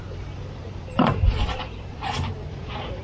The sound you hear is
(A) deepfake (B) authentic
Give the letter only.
A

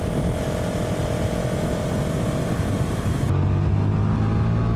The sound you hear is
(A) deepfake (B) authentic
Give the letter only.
B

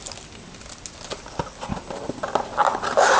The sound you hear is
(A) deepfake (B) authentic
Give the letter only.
B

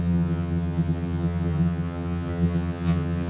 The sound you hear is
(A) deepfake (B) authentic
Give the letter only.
A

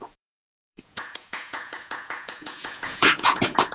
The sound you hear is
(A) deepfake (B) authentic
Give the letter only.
A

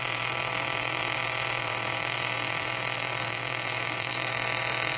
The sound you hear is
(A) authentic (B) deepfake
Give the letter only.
B